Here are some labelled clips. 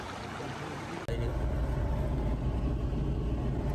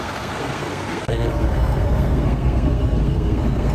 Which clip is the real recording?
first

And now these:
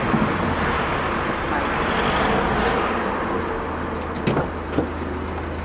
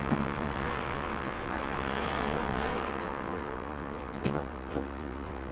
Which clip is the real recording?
first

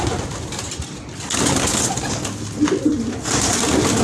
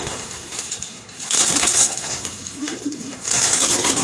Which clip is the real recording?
first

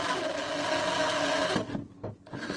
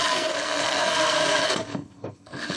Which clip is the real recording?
first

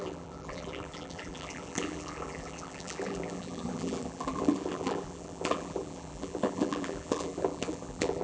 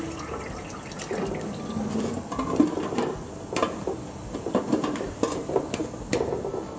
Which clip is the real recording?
second